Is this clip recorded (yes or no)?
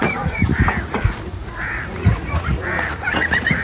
no